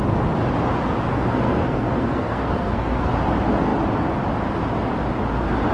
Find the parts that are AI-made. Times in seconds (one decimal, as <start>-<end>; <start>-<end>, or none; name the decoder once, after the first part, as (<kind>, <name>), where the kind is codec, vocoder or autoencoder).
1.1-3.1 (codec, SNAC)